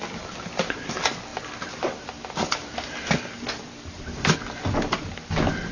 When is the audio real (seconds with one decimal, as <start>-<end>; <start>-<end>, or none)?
0.0-5.7